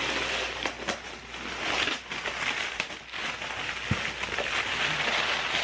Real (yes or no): yes